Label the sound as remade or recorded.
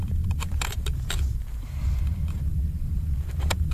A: remade